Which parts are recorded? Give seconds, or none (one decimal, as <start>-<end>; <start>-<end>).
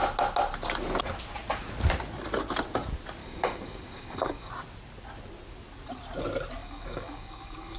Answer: 0.0-3.2; 4.5-6.6